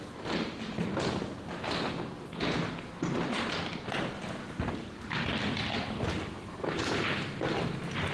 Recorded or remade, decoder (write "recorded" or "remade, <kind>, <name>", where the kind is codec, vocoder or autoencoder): recorded